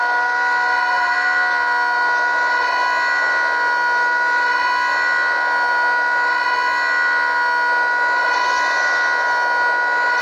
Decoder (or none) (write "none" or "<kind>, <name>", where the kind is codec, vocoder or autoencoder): none